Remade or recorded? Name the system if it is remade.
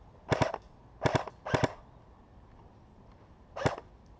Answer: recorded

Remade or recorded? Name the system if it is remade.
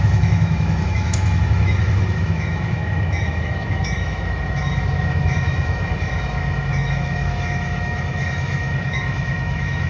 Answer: remade, autoencoder, DAC-VAE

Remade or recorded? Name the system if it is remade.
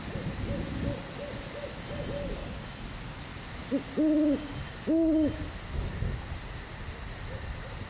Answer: recorded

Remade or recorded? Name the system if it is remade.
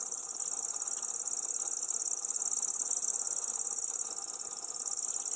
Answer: recorded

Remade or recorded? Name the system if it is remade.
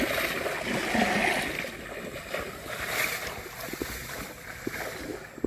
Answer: recorded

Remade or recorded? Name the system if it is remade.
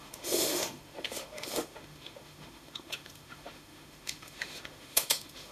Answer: remade, autoencoder, DAC-VAE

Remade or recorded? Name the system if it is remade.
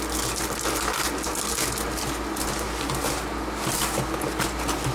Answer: recorded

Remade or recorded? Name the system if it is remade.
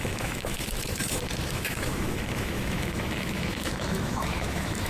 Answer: remade, autoencoder, DAC-VAE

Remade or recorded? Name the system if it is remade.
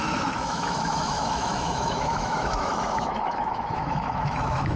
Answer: remade, autoencoder, DAC-VAE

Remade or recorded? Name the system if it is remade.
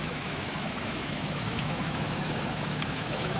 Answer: remade, autoencoder, DAC-VAE